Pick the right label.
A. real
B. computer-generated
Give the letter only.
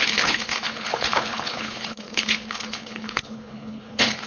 B